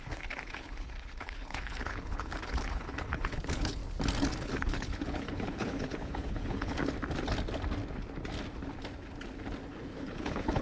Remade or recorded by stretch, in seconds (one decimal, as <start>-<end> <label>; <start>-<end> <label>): 0.0-3.8 remade; 3.8-4.4 recorded; 4.4-6.8 remade; 6.8-10.0 recorded; 10.0-10.6 remade